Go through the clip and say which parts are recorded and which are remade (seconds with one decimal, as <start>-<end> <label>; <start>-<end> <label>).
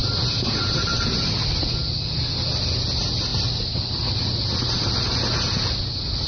0.0-6.3 recorded